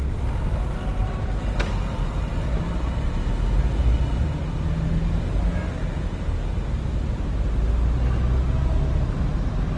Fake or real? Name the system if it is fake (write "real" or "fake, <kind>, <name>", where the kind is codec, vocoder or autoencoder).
real